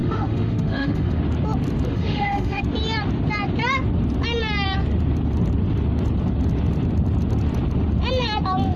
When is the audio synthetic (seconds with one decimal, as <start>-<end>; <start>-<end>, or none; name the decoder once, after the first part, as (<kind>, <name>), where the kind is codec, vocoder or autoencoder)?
0.0-1.2 (autoencoder, DAC-VAE); 1.9-2.6